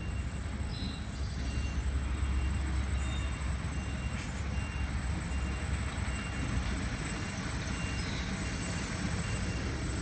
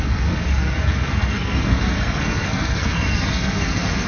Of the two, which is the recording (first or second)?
first